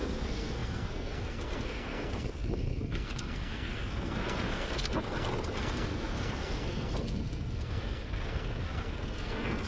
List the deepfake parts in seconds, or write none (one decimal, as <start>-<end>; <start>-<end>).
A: 0.0-9.7